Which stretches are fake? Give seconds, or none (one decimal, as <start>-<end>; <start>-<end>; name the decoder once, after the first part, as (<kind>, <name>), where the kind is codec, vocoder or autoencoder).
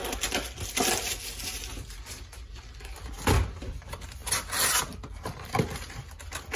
none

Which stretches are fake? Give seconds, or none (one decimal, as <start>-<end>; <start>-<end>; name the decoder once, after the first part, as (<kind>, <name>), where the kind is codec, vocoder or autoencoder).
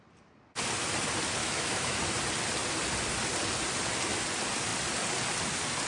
1.4-2.0 (autoencoder, DAC-VAE)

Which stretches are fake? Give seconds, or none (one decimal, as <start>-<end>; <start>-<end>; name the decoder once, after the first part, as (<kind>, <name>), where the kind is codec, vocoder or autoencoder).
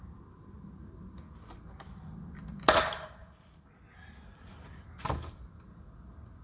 none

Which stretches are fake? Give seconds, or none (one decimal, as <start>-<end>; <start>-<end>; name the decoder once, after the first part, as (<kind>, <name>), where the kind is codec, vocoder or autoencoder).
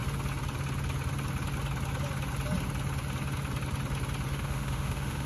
4.3-5.3 (autoencoder, DAC-VAE)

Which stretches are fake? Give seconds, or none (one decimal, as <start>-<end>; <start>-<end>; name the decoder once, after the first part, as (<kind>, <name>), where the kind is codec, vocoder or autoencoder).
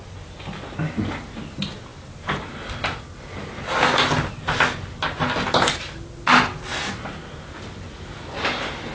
none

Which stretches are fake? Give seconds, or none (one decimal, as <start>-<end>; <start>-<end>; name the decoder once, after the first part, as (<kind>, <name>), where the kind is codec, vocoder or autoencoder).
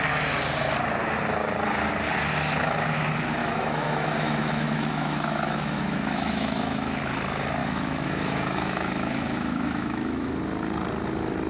3.4-7.0 (autoencoder, DAC-VAE); 7.6-10.3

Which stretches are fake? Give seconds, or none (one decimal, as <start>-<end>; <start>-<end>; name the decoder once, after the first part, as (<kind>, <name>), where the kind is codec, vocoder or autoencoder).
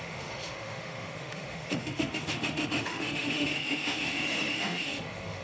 0.0-5.4 (autoencoder, DAC-VAE)